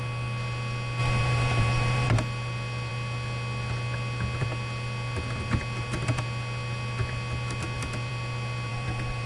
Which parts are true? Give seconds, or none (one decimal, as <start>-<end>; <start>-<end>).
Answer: 0.0-1.0; 2.1-8.7